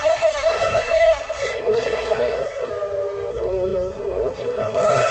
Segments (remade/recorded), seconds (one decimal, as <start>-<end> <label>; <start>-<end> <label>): 0.0-2.7 remade; 2.7-3.3 recorded; 3.3-5.1 remade